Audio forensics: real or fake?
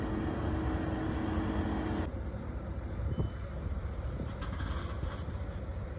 real